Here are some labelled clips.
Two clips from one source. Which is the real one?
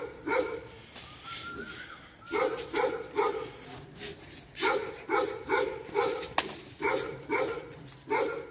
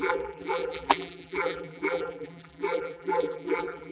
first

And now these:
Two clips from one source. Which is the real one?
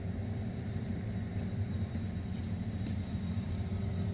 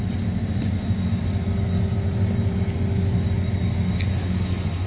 second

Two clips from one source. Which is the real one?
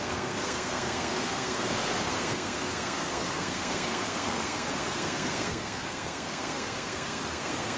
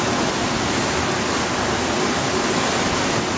second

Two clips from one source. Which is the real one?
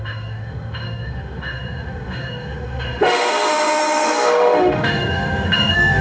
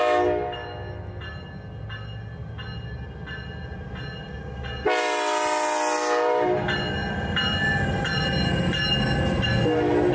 second